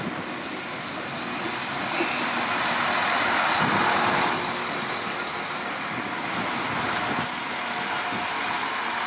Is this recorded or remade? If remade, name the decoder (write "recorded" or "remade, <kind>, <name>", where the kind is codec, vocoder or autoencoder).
recorded